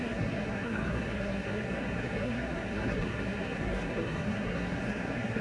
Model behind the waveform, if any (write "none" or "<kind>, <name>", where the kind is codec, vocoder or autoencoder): codec, SNAC